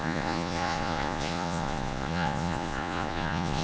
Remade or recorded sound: remade